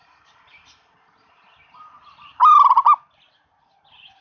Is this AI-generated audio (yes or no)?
no